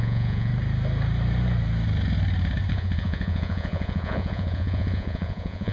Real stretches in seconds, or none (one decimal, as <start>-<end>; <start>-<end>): 0.5-2.7